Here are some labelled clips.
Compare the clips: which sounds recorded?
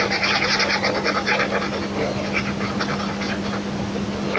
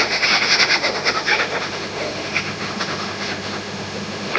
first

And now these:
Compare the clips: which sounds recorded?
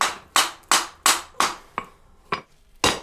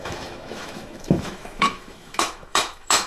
first